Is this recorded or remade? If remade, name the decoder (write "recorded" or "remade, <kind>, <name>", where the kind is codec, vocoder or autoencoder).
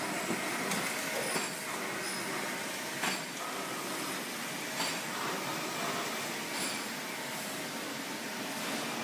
recorded